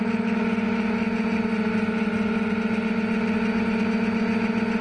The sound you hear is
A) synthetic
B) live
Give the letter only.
B